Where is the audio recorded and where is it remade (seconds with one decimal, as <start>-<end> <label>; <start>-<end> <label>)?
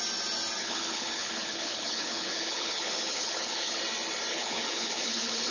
0.0-0.6 recorded; 0.6-3.8 remade; 3.8-4.3 recorded; 4.3-5.5 remade